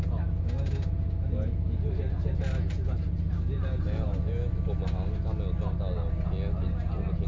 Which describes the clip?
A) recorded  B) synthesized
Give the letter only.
A